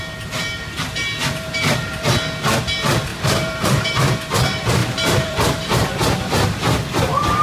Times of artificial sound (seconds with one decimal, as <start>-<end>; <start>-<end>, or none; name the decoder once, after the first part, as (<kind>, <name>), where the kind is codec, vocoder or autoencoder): 1.2-2.1 (vocoder, BigVGAN v2); 3.1-3.9; 4.8-5.9